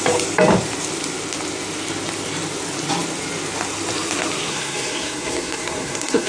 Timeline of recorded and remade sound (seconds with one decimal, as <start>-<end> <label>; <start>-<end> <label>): 0.0-4.5 recorded; 4.5-6.3 remade